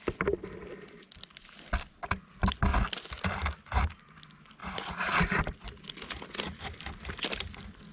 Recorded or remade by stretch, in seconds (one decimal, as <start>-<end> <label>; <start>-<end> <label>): 0.0-4.6 recorded; 4.6-5.4 remade; 5.4-7.9 recorded